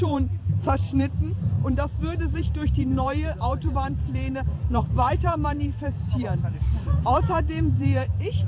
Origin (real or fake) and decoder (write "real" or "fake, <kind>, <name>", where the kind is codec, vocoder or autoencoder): fake, vocoder, BigVGAN v2